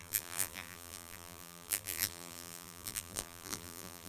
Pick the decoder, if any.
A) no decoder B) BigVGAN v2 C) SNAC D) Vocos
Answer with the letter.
B